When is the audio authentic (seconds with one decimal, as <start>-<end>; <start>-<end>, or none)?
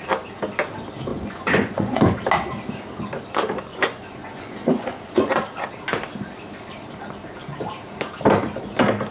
0.0-1.1; 2.2-3.7; 5.3-9.1